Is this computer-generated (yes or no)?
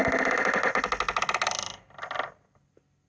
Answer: no